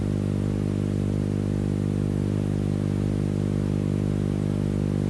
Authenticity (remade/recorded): recorded